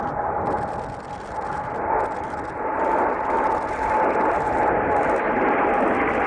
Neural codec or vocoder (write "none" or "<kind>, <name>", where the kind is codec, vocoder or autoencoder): none